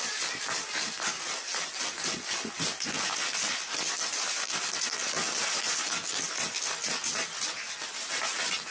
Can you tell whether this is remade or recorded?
recorded